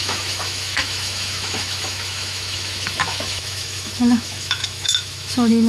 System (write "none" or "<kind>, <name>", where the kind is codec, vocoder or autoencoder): autoencoder, DAC-VAE